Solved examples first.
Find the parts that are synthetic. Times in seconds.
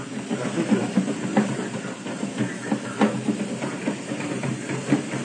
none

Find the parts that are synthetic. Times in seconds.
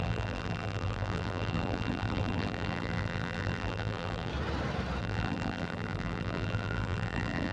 0.0-4.3 (vocoder, BigVGAN v2); 5.0-7.5